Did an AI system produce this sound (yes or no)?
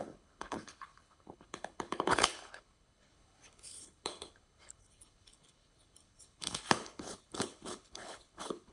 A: yes